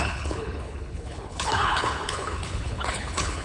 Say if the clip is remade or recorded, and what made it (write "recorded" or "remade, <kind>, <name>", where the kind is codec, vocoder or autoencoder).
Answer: remade, codec, HILCodec